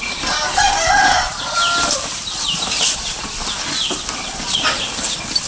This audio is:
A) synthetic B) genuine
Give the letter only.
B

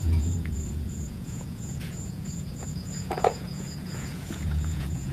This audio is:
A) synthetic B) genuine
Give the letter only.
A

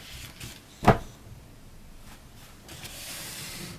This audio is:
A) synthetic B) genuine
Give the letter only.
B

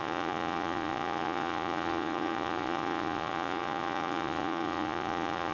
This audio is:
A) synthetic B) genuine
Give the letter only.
A